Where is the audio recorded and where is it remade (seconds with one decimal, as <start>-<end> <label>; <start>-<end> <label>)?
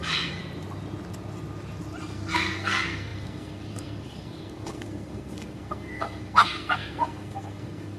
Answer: 0.0-0.4 remade; 0.4-2.0 recorded; 2.0-8.0 remade